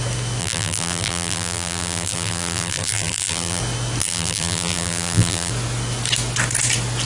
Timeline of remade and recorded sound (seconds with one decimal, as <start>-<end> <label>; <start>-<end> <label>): 0.0-0.4 recorded; 0.4-3.6 remade; 3.6-4.0 recorded; 4.0-5.5 remade; 5.5-7.0 recorded